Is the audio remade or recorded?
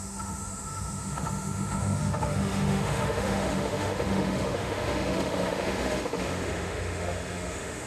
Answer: remade